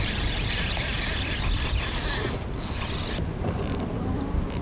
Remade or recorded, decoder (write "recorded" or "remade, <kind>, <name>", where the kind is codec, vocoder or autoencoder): recorded